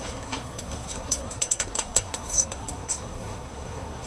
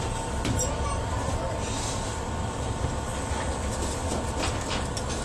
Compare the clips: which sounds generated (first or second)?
first